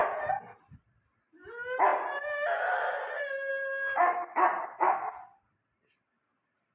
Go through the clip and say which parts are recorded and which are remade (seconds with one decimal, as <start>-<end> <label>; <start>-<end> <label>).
0.0-4.5 recorded; 4.5-6.0 remade; 6.0-6.7 recorded